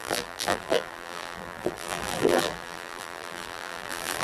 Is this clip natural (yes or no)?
no